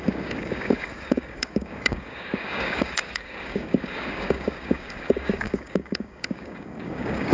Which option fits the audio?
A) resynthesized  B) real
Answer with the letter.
A